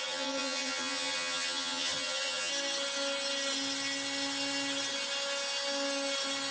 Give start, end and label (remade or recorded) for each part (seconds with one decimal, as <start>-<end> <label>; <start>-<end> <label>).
0.0-2.5 remade; 2.5-6.5 recorded